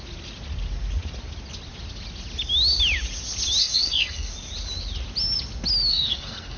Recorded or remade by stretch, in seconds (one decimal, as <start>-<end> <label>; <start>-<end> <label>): 0.0-3.6 recorded; 3.6-4.3 remade; 4.3-5.9 recorded; 5.9-6.6 remade